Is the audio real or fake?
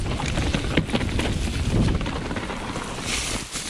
real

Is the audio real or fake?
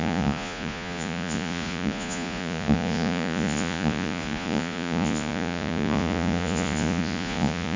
fake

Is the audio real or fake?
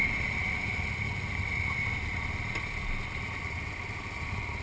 real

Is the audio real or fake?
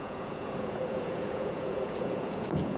fake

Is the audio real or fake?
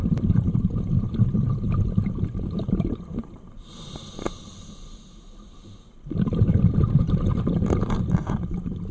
real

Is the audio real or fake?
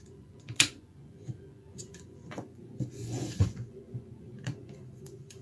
fake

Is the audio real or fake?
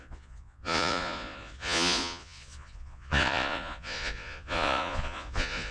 fake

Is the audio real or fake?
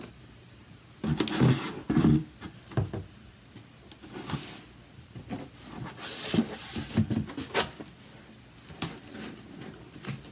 real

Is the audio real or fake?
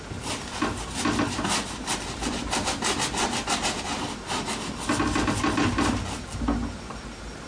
real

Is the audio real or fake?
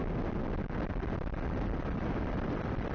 real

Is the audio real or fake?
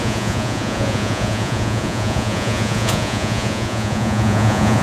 fake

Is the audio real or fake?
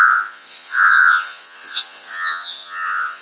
fake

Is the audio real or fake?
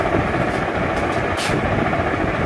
real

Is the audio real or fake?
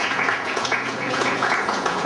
fake